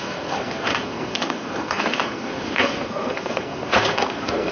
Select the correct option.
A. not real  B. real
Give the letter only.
A